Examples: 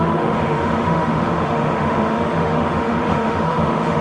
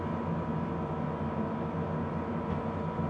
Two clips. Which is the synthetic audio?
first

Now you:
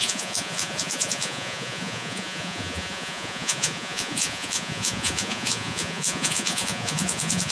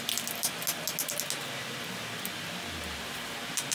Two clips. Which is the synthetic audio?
first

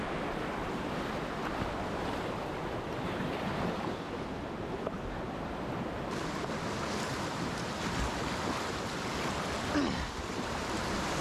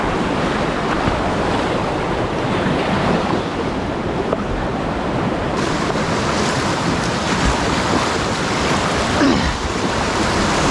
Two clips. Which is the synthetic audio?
second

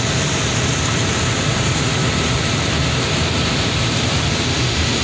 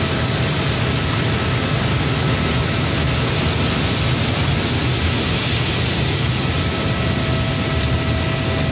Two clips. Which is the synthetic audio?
first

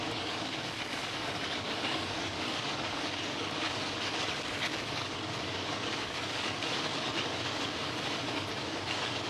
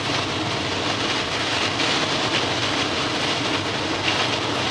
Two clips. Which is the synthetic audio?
first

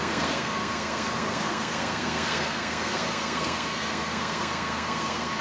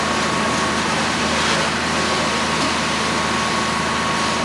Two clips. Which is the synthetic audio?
first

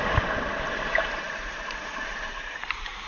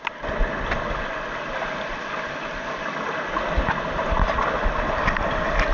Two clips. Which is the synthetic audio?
first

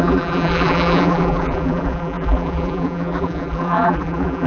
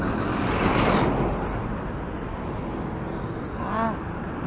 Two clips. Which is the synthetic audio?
first